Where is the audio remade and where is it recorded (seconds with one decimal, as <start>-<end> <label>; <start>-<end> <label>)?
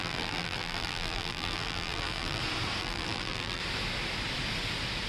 0.0-2.4 remade; 2.4-2.8 recorded; 2.8-3.6 remade; 3.6-5.1 recorded